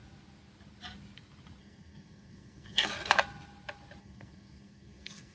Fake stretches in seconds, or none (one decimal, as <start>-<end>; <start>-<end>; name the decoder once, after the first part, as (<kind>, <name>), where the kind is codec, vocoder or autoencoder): 1.6-2.9 (codec, SNAC); 4.0-5.3